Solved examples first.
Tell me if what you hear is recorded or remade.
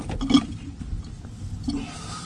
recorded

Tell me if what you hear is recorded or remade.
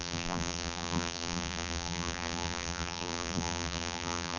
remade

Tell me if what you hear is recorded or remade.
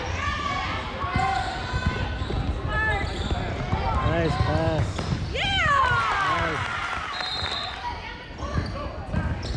recorded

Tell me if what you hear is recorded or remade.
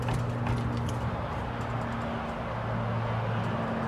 recorded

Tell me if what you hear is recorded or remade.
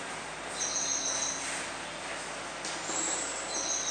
recorded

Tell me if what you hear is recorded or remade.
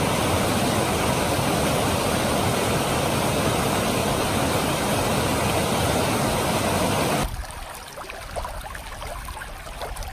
recorded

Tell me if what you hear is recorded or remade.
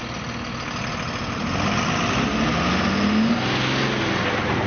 recorded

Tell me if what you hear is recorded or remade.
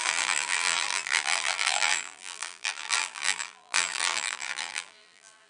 remade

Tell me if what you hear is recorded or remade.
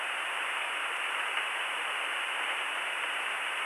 recorded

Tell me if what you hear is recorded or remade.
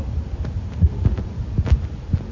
remade